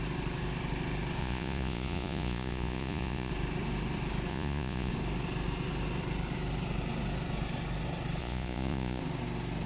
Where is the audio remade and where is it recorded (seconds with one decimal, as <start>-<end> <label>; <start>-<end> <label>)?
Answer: 0.0-1.2 recorded; 1.2-3.3 remade; 3.3-4.3 recorded; 4.3-4.9 remade; 4.9-8.2 recorded; 8.2-9.0 remade; 9.0-9.7 recorded